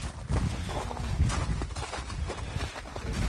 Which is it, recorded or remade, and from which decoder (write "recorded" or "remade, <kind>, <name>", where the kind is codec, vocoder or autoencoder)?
recorded